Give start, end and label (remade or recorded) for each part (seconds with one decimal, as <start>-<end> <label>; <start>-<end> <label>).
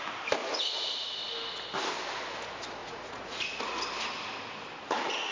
0.0-0.4 recorded; 0.4-1.1 remade; 1.1-2.8 recorded; 2.8-3.6 remade; 3.6-5.3 recorded